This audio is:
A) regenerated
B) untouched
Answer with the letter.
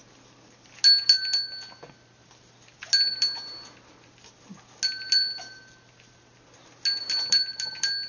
B